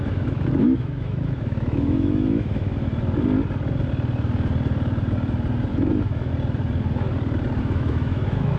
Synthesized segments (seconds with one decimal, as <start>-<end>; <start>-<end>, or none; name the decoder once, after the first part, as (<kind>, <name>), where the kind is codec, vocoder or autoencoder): 0.0-2.9 (autoencoder, DAC-VAE); 5.7-6.3; 7.6-8.6